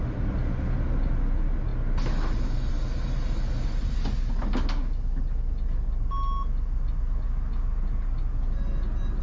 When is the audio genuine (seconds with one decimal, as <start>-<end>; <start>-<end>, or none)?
0.0-9.2